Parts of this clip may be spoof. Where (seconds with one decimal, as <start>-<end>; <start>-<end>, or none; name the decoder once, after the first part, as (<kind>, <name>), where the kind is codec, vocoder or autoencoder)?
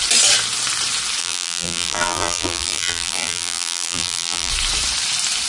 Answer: 1.2-4.5 (vocoder, BigVGAN v2)